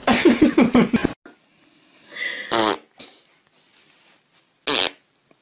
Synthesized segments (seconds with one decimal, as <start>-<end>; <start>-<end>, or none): none